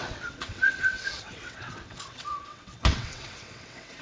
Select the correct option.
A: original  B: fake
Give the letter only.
B